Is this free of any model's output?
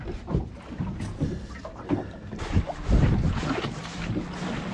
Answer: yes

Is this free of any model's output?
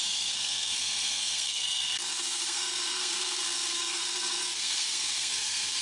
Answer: no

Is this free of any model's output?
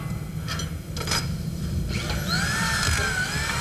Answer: yes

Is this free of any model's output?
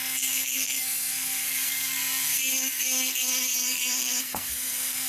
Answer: no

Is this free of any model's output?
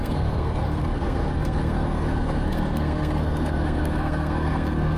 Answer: no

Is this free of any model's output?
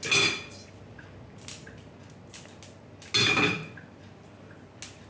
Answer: yes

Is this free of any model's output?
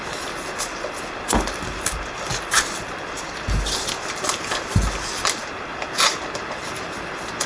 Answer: yes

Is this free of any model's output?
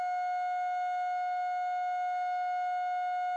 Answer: yes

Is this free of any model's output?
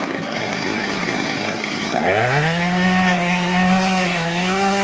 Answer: no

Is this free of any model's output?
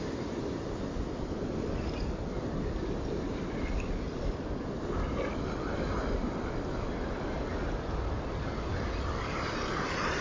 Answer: yes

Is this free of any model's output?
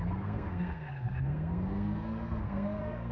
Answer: no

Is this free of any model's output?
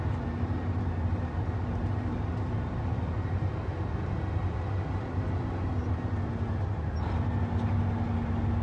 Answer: yes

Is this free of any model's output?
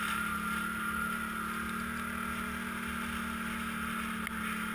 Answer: yes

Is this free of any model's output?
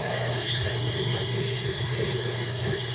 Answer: no